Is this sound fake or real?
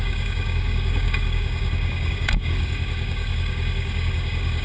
fake